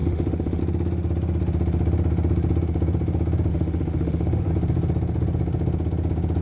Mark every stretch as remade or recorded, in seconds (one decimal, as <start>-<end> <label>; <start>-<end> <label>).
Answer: 0.0-0.6 remade; 0.6-3.5 recorded; 3.5-4.5 remade; 4.5-6.4 recorded